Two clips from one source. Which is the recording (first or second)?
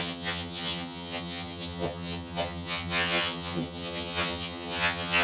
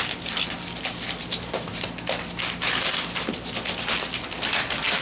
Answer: second